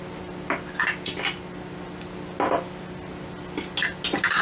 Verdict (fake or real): real